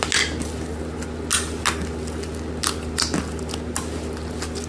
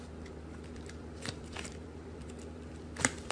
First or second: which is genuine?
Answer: first